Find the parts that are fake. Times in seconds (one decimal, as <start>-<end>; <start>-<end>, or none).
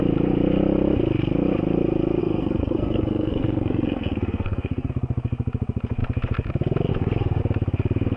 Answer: 2.2-4.9; 6.9-7.4